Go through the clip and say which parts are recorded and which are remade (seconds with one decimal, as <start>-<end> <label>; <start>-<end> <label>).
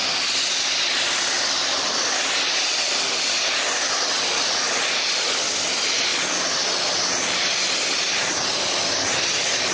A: 0.0-9.7 recorded